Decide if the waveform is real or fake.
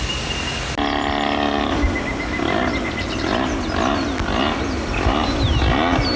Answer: real